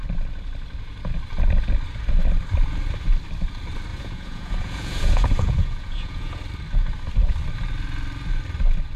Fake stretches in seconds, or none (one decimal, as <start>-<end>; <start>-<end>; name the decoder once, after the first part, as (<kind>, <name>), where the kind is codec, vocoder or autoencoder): 3.9-6.4 (vocoder, Vocos)